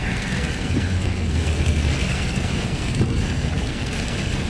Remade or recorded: remade